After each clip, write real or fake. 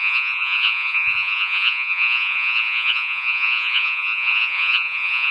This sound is fake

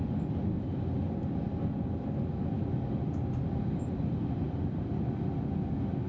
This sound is real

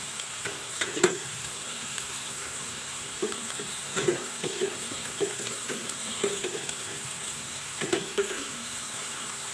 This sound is fake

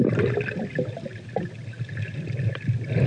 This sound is real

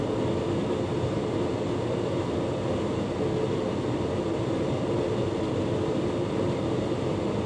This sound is real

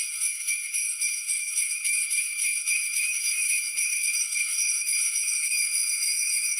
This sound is fake